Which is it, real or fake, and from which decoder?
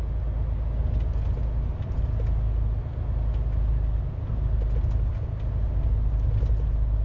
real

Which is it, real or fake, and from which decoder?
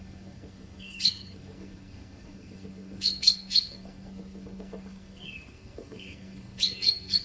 fake, codec, SNAC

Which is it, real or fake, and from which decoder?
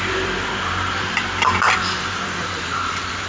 fake, vocoder, BigVGAN v2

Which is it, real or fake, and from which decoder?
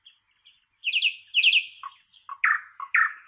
real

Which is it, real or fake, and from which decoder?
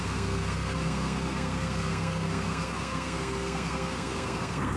fake, codec, SNAC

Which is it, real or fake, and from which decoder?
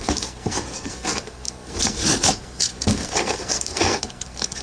fake, codec, SNAC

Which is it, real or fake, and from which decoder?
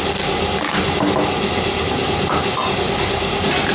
real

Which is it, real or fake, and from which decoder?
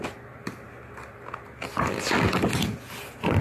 real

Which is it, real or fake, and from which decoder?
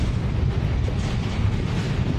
real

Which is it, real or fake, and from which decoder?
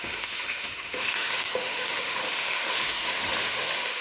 fake, autoencoder, DAC-VAE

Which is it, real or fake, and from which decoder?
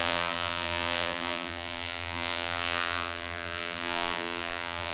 fake, vocoder, BigVGAN v2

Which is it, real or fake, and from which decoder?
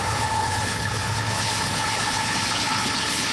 fake, codec, HILCodec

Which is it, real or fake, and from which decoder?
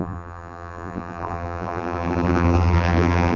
fake, vocoder, BigVGAN v2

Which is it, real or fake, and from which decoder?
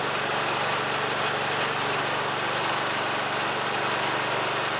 real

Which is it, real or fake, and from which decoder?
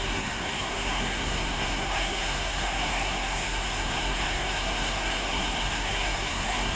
fake, codec, SNAC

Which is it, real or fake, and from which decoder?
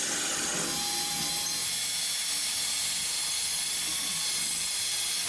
real